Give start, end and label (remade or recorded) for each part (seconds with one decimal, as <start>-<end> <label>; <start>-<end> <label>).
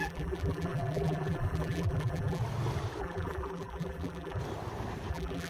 0.0-2.4 remade; 2.4-3.0 recorded; 3.0-4.4 remade; 4.4-5.1 recorded; 5.1-5.5 remade